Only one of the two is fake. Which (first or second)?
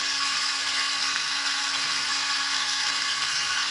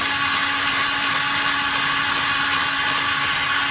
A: first